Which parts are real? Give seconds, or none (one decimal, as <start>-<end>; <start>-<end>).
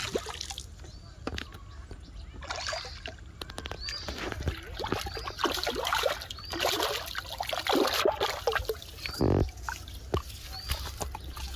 0.0-11.6